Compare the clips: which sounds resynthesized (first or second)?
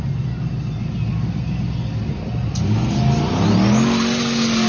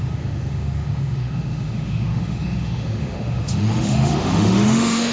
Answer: second